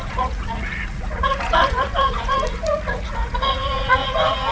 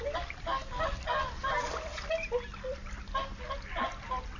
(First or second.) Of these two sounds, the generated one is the first